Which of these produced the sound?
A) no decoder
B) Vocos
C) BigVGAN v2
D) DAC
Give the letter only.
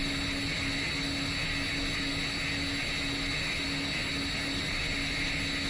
A